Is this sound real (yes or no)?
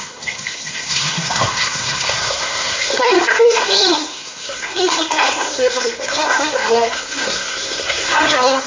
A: no